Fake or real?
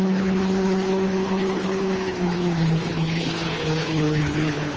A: fake